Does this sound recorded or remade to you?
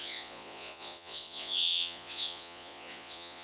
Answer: remade